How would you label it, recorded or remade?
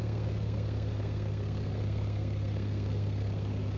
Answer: remade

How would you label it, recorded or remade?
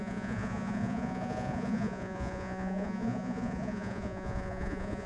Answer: remade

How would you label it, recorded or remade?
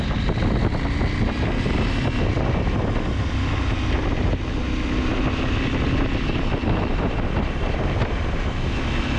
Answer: recorded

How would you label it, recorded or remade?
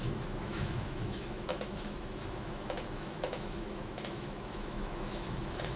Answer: remade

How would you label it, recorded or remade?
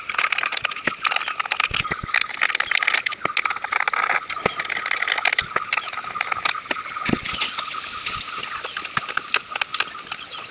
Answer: recorded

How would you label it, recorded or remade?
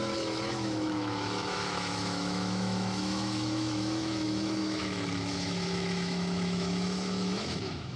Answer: remade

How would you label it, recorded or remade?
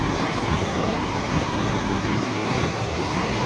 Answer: remade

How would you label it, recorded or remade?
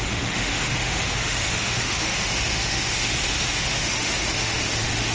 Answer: remade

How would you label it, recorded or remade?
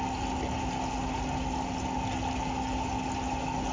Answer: recorded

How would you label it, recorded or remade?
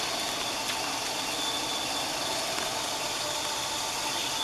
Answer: recorded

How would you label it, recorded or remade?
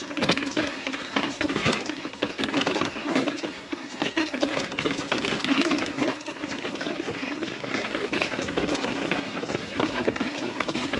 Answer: remade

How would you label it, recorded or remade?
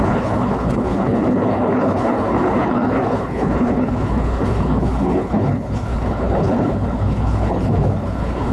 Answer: remade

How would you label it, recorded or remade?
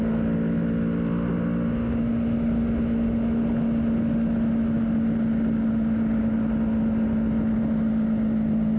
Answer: recorded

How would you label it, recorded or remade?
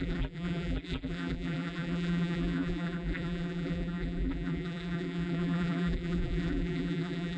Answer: remade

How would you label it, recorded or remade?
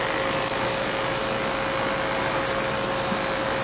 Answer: recorded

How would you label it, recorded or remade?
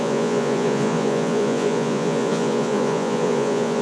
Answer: remade